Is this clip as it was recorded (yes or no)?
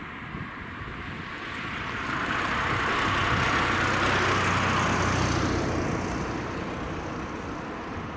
yes